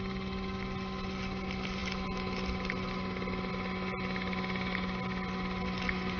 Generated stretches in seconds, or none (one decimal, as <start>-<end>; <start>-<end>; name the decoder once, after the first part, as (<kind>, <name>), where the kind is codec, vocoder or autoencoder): none